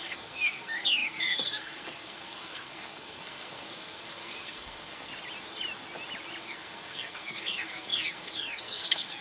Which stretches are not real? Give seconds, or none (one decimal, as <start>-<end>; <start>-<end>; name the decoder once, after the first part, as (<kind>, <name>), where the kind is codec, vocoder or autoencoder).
0.0-5.1 (codec, SNAC); 6.4-9.2